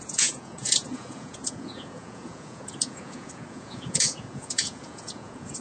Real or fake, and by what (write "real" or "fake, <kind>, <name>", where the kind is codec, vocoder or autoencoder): fake, vocoder, Vocos